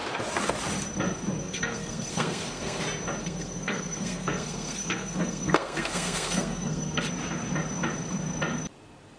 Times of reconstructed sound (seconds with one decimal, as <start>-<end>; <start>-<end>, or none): 1.4-2.8; 3.2-7.0

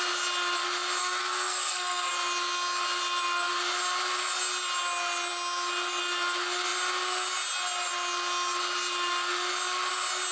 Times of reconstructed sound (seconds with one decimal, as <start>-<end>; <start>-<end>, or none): 1.0-2.1

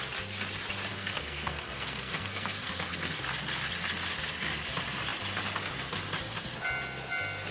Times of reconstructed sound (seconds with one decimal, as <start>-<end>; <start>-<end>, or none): 0.9-3.2

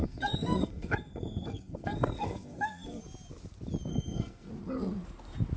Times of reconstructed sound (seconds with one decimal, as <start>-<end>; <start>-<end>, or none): 0.0-3.0; 3.9-4.5

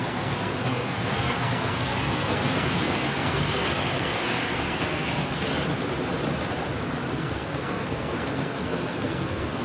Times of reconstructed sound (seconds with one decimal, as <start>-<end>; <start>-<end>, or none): 0.0-5.5; 7.1-9.6

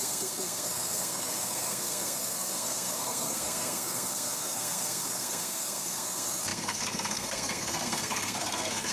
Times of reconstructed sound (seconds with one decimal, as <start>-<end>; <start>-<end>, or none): 0.0-8.9